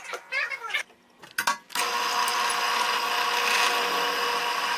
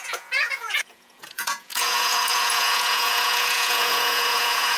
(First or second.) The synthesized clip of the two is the second